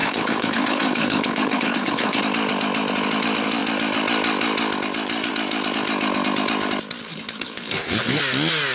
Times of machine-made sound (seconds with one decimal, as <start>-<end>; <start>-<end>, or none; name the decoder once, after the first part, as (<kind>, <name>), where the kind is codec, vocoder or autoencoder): 0.0-2.2 (codec, HILCodec); 7.0-8.2